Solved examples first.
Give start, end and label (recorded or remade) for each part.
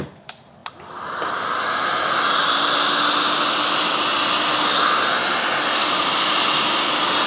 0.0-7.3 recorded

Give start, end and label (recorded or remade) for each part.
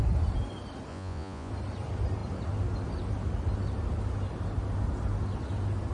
0.0-0.9 recorded; 0.9-1.5 remade; 1.5-5.9 recorded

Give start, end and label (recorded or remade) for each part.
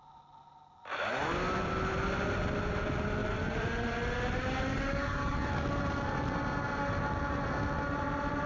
0.0-8.5 recorded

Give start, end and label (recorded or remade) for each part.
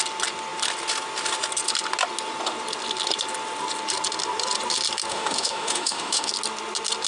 0.0-5.1 recorded; 5.1-6.3 remade; 6.3-7.1 recorded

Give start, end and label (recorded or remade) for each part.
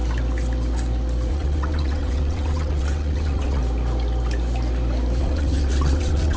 0.0-1.3 recorded; 1.3-3.6 remade; 3.6-5.2 recorded; 5.2-6.4 remade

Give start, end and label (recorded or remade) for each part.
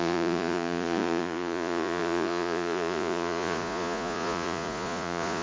0.0-5.4 remade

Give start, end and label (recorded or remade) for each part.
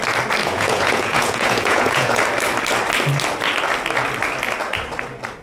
0.0-0.4 recorded; 0.4-2.2 remade; 2.2-5.4 recorded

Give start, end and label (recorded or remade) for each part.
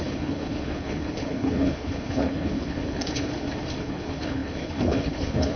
0.0-3.3 remade; 3.3-3.8 recorded; 3.8-5.6 remade